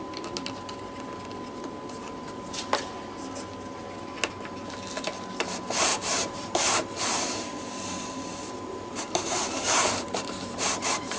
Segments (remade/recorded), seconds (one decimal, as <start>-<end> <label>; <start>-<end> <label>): 0.0-5.9 recorded; 5.9-11.2 remade